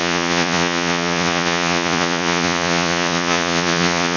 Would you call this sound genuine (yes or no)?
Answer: no